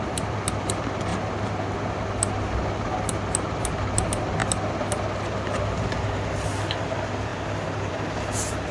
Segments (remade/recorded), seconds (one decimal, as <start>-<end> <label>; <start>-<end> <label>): 0.0-8.7 recorded